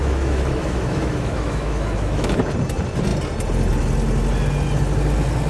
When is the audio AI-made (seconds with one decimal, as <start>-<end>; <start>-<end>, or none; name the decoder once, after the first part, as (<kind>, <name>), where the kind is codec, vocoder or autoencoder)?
0.0-2.4 (autoencoder, DAC-VAE)